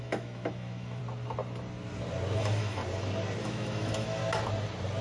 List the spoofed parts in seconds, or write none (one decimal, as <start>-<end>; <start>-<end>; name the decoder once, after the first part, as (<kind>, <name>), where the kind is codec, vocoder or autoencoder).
0.0-1.0 (autoencoder, DAC-VAE); 2.4-2.8; 3.4-4.2